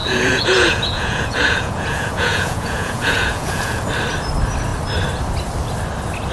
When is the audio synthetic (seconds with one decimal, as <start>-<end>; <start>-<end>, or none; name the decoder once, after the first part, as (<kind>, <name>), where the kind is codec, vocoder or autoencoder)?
0.0-3.8 (vocoder, Vocos)